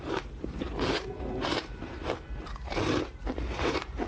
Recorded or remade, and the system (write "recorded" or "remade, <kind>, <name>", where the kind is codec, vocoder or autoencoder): remade, vocoder, BigVGAN v2